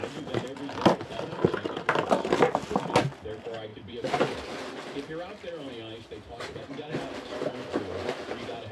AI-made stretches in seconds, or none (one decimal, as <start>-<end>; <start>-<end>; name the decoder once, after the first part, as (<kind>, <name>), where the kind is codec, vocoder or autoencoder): 3.7-5.7 (vocoder, BigVGAN v2)